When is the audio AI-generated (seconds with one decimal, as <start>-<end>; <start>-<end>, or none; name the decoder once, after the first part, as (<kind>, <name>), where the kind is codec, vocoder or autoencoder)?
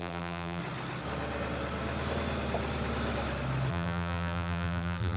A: 0.0-0.6 (vocoder, BigVGAN v2); 3.7-5.2